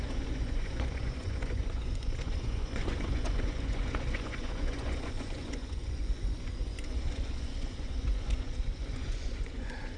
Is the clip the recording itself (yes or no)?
no